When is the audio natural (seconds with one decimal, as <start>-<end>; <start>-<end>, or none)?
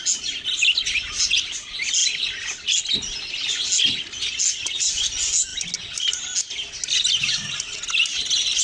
0.0-8.6